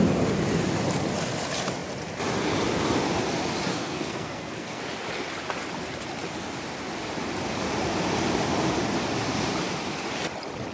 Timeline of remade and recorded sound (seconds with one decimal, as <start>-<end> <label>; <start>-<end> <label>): 0.0-3.7 recorded; 3.7-4.8 remade; 4.8-10.7 recorded